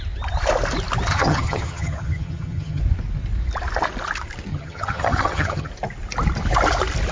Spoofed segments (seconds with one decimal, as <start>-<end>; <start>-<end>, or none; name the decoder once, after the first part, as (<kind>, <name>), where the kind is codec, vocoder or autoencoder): 1.1-2.8 (vocoder, HiFi-GAN); 4.5-5.7